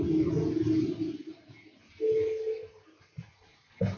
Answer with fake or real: real